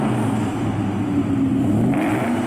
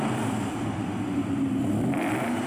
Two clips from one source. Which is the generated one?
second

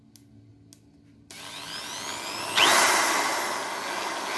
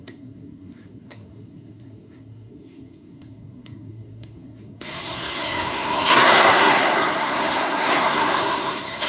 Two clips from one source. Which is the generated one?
second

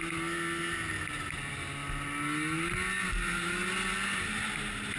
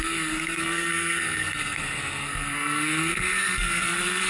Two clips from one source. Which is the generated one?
second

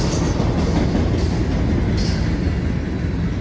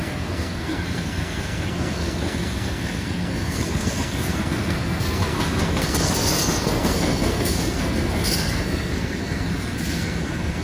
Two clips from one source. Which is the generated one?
second